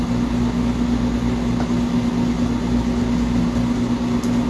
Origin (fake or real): real